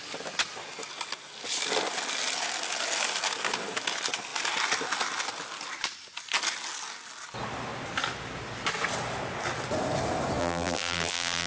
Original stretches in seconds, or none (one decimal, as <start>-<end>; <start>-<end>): 0.0-10.4